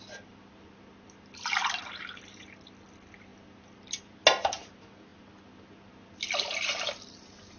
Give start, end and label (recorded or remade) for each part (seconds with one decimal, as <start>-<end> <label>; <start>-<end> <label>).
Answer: 0.0-7.6 recorded